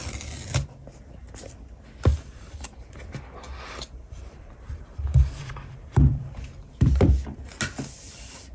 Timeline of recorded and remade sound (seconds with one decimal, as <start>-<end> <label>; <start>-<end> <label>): 0.0-2.1 recorded; 2.1-2.9 remade; 2.9-3.5 recorded; 3.5-6.9 remade; 6.9-8.5 recorded